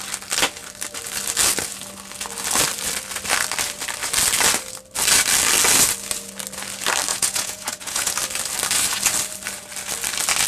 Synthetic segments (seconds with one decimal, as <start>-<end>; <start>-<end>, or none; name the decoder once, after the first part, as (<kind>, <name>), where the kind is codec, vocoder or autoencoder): 7.1-8.1 (vocoder, Vocos)